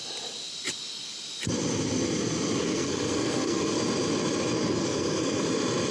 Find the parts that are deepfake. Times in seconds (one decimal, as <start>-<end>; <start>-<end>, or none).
2.6-3.8; 4.8-5.4